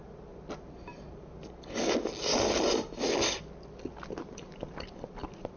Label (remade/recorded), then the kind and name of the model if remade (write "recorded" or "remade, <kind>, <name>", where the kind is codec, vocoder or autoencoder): recorded